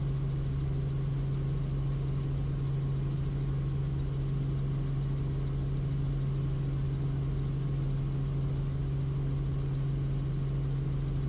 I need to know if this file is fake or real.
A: real